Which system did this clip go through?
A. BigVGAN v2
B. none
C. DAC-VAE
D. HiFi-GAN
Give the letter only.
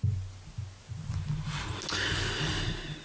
B